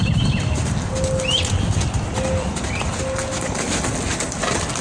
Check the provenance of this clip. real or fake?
real